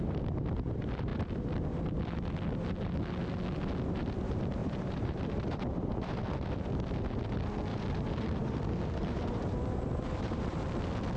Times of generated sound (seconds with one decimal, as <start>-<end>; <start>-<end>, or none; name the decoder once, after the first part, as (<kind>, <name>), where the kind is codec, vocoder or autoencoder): 4.6-6.2 (vocoder, BigVGAN v2); 7.7-10.7